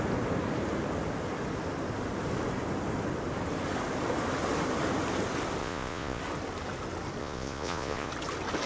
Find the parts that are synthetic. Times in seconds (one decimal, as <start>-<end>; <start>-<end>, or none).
5.6-6.2; 7.2-8.1

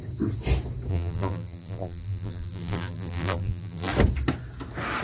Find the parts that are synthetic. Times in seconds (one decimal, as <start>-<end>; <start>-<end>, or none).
0.9-3.9

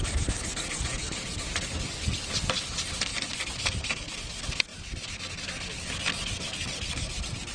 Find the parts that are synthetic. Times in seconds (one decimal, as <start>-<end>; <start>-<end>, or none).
none

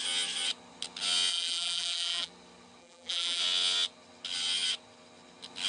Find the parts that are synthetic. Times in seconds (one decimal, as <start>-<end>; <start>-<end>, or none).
1.3-2.3; 2.8-3.4